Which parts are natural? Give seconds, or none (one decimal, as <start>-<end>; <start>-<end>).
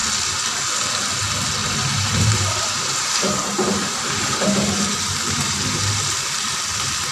0.0-1.6; 5.9-7.1